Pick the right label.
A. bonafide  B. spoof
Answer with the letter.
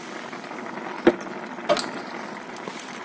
A